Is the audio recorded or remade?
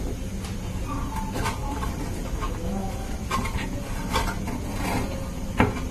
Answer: recorded